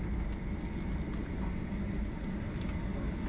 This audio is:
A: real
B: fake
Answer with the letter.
A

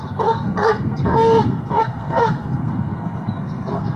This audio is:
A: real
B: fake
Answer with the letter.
B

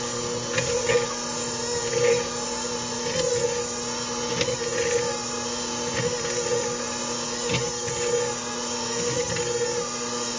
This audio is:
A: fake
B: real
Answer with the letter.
B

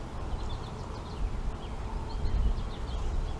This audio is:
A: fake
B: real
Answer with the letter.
B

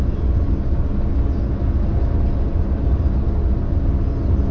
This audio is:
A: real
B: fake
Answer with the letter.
A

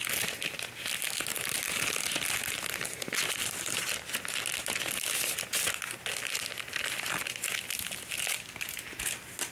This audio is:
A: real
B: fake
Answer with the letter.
A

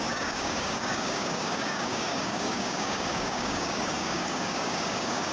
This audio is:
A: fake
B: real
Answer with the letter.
A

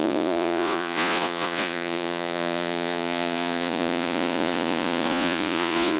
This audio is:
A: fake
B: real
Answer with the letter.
A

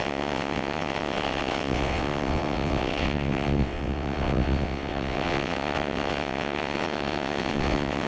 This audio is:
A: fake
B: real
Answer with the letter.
A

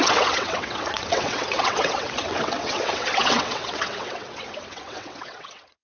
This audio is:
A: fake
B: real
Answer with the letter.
A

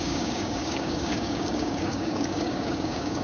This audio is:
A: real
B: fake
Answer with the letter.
B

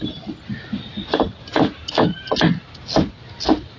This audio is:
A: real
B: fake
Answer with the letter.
A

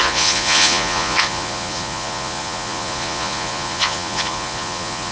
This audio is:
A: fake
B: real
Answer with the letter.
A